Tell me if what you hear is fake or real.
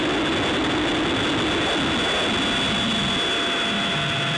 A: real